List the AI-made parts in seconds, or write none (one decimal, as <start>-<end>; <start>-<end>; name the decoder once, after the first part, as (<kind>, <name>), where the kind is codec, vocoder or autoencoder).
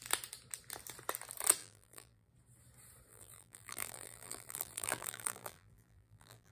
1.6-2.3 (vocoder, BigVGAN v2); 3.1-6.5